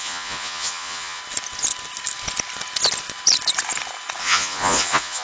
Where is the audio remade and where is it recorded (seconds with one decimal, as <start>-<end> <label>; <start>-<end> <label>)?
0.0-1.2 remade; 1.2-4.2 recorded; 4.2-5.2 remade